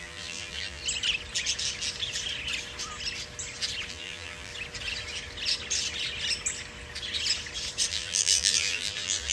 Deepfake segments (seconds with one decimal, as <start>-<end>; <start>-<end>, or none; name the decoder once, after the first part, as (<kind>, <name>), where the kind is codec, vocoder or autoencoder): 0.0-0.8 (vocoder, BigVGAN v2); 3.9-4.5; 7.9-9.3